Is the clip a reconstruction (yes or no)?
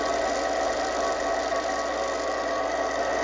no